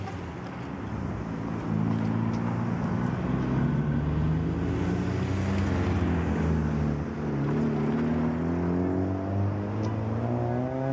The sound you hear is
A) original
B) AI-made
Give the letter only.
A